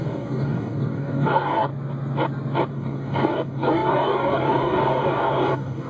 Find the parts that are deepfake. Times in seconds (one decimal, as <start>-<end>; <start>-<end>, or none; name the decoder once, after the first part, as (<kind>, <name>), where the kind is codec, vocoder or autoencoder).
0.0-1.7 (codec, DAC); 2.7-5.9